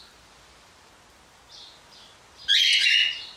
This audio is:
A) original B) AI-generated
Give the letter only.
A